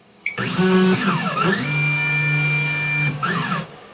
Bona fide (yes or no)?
no